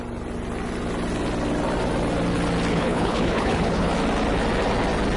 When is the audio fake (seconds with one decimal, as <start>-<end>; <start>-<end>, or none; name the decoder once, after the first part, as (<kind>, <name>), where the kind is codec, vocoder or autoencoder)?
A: 2.7-3.9 (codec, HILCodec)